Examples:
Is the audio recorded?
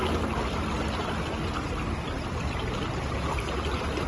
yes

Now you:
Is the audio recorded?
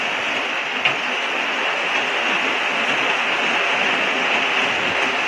yes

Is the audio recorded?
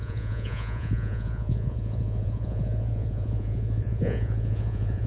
no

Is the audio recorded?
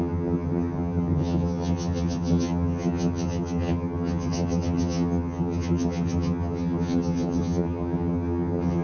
no